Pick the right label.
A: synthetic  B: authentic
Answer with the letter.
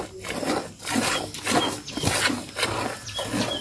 B